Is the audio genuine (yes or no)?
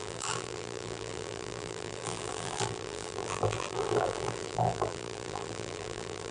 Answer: no